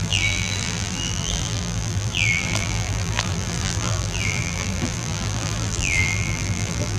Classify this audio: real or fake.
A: fake